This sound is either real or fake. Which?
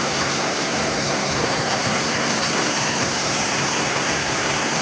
fake